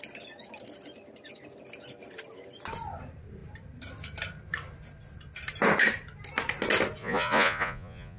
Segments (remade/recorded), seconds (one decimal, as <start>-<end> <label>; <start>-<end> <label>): 0.0-7.0 recorded; 7.0-8.2 remade